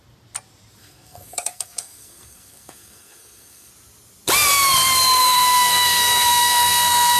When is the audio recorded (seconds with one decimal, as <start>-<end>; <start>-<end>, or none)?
0.0-0.8; 3.7-5.2